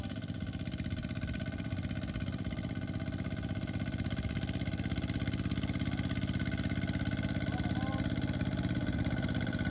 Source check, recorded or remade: recorded